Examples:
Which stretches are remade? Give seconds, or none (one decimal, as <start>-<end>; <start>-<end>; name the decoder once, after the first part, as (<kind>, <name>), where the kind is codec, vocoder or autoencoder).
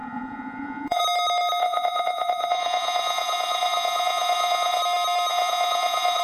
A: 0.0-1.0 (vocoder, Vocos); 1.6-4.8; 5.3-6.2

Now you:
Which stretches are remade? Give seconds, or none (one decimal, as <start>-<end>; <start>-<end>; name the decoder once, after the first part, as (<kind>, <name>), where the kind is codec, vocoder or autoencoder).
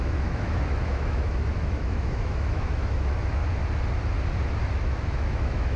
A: 0.0-3.4 (autoencoder, DAC-VAE); 4.7-5.8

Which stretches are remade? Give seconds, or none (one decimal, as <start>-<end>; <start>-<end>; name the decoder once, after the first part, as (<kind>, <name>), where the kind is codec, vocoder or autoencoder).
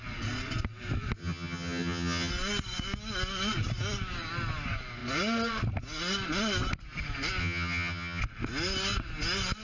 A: 1.2-2.3 (vocoder, HiFi-GAN); 7.4-8.2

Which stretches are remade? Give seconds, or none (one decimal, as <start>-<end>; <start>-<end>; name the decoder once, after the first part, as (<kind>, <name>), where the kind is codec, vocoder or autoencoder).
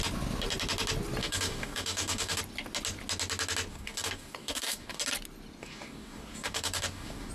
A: 1.2-2.4 (codec, DAC); 3.7-5.0; 5.6-7.3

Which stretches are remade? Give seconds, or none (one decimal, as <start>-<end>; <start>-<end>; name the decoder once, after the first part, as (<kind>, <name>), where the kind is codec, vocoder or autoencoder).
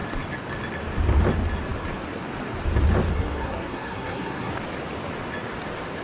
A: 3.1-4.5 (codec, SNAC)